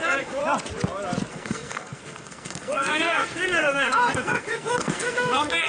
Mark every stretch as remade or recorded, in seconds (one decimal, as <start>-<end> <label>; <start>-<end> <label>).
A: 0.0-0.4 remade; 0.4-1.3 recorded; 1.3-5.7 remade